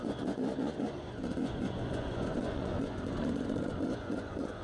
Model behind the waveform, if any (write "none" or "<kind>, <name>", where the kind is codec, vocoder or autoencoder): vocoder, Vocos